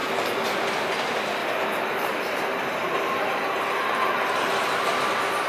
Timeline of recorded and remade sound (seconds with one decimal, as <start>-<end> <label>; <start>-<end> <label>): 0.0-1.4 recorded; 1.4-4.7 remade; 4.7-5.5 recorded